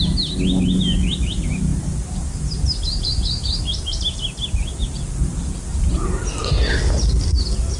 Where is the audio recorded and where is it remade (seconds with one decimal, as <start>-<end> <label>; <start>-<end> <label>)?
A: 0.0-1.7 recorded; 1.7-4.0 remade; 4.0-7.8 recorded

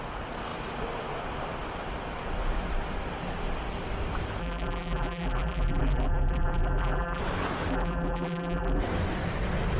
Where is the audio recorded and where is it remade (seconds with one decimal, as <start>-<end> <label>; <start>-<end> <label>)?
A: 0.0-4.4 recorded; 4.4-7.2 remade; 7.2-7.7 recorded; 7.7-8.8 remade; 8.8-9.8 recorded

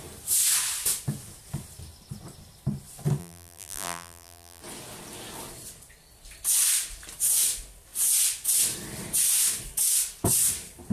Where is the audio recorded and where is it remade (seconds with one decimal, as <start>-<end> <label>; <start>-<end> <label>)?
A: 0.0-3.2 recorded; 3.2-4.6 remade; 4.6-10.9 recorded